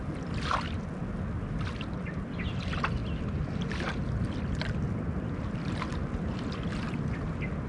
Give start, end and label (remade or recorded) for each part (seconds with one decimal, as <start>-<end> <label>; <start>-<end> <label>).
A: 0.0-7.7 recorded